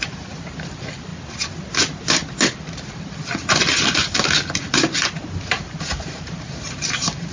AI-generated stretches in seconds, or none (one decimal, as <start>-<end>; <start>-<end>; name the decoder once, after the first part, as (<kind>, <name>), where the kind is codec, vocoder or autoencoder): 0.0-1.1 (vocoder, BigVGAN v2); 5.5-7.3